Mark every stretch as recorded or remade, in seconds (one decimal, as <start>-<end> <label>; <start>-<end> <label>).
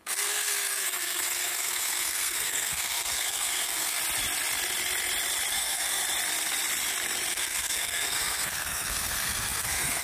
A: 0.0-4.0 remade; 4.0-5.5 recorded; 5.5-6.0 remade; 6.0-7.3 recorded; 7.3-10.0 remade